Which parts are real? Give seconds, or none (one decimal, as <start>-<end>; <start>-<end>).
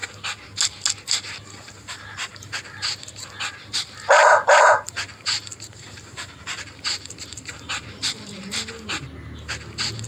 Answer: 0.0-4.2; 8.5-10.1